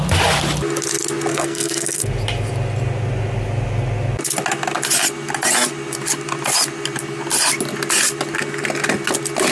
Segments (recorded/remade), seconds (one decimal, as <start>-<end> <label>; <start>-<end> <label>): 0.0-1.3 recorded; 1.3-2.1 remade; 2.1-9.5 recorded